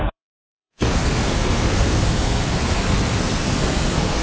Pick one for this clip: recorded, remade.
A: remade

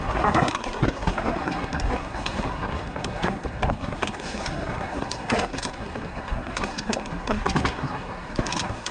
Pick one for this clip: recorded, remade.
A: remade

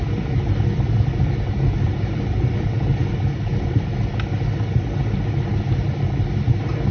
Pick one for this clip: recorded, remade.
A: recorded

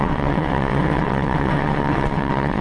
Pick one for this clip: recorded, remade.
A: remade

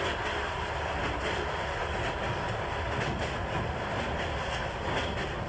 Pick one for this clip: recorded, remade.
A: recorded